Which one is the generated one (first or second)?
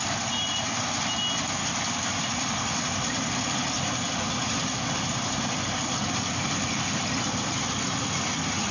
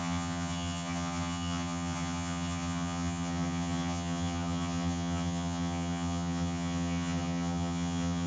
second